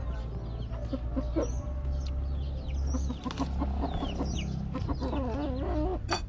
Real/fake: real